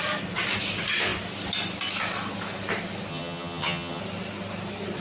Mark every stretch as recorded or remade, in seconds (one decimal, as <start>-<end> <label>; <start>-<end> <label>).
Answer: 0.0-3.1 recorded; 3.1-4.0 remade; 4.0-5.0 recorded